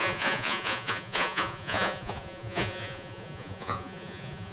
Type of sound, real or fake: fake